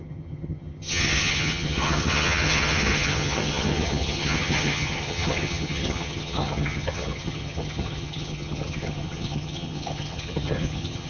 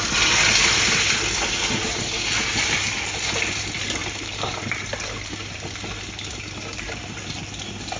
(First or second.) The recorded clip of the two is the second